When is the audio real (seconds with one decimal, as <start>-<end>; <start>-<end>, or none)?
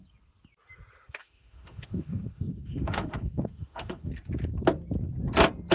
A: 0.0-1.2; 4.1-5.7